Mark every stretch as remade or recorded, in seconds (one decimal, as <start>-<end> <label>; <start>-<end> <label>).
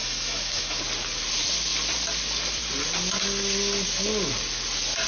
0.0-0.8 remade; 0.8-5.1 recorded